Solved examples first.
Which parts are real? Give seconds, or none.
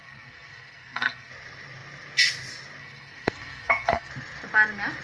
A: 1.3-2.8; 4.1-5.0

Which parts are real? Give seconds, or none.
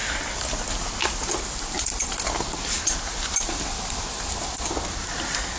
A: 0.0-5.6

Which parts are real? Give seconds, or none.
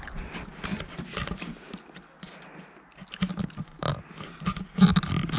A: 0.0-5.4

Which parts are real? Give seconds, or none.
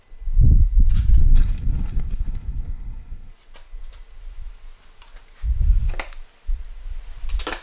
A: 0.0-1.2; 3.3-7.6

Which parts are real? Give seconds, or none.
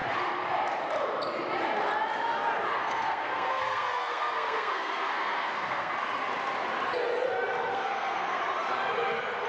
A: 0.0-2.8; 5.9-7.7; 8.4-9.5